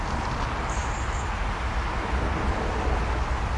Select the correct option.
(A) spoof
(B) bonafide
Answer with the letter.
B